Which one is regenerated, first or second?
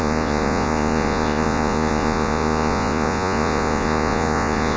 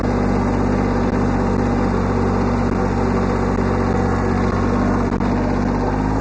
first